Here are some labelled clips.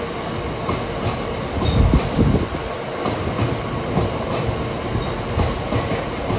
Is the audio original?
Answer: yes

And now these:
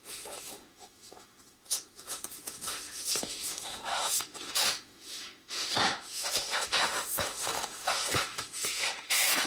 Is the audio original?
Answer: no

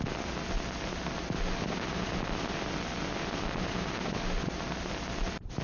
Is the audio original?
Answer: yes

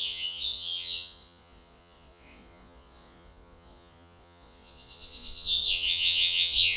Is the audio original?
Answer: no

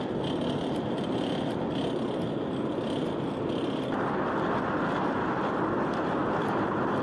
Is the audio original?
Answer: yes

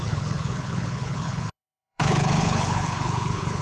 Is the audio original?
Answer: no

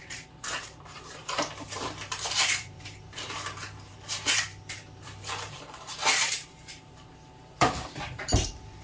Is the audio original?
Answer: no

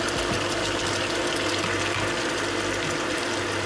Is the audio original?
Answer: yes